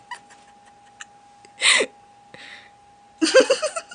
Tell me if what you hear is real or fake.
real